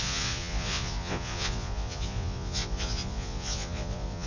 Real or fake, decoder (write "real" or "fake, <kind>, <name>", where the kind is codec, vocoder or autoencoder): fake, vocoder, Vocos